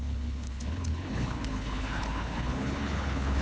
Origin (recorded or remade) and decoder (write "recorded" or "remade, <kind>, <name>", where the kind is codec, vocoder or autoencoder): remade, codec, HILCodec